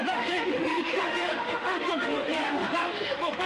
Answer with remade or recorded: remade